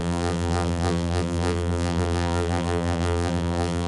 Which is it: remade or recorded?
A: remade